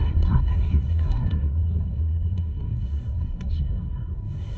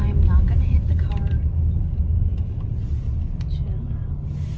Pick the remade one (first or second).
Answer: first